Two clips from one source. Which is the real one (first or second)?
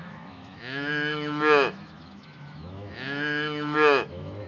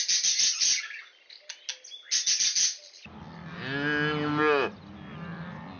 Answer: second